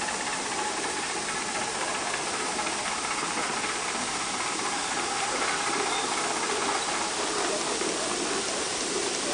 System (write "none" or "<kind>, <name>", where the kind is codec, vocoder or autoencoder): none